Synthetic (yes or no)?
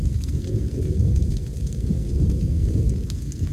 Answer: yes